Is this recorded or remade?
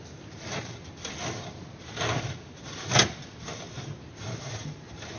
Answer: recorded